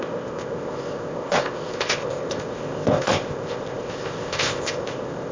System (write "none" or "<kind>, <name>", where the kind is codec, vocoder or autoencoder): codec, ZipCodec